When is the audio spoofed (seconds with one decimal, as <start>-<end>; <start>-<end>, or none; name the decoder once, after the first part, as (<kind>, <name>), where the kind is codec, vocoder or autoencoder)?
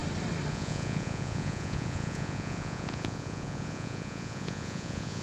0.5-5.2 (vocoder, Vocos)